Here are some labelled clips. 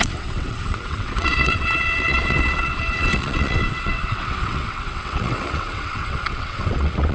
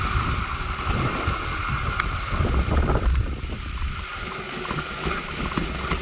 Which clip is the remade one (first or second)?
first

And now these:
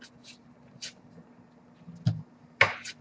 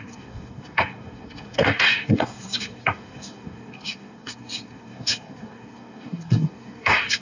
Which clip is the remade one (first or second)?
second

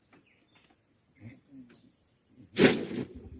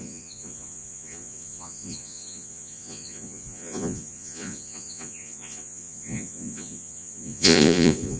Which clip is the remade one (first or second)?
second